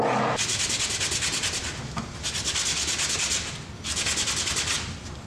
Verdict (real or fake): real